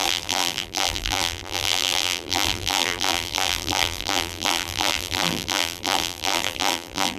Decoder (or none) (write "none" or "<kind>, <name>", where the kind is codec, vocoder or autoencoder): vocoder, BigVGAN v2